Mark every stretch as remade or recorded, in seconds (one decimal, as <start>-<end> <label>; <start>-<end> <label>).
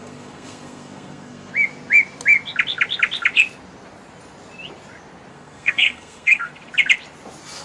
0.0-1.5 remade; 1.5-5.3 recorded; 5.3-6.5 remade; 6.5-7.6 recorded